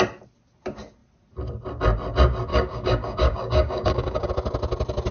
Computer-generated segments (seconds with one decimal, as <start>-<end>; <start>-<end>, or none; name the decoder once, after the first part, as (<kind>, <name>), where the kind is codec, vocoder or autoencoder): 2.5-4.3 (codec, DAC)